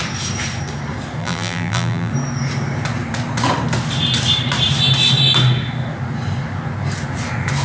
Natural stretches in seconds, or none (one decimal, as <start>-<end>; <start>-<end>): 0.0-1.2; 2.1-7.6